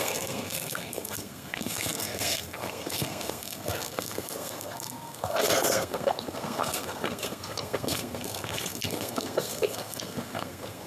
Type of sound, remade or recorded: remade